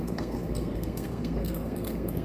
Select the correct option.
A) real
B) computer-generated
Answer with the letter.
B